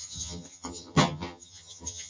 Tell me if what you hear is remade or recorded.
remade